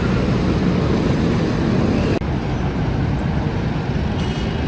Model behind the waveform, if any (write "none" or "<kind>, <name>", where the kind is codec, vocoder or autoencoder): none